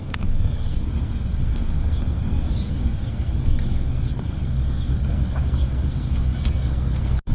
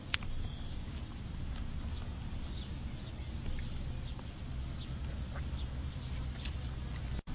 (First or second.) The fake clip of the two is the first